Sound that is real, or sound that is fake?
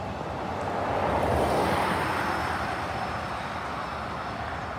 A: real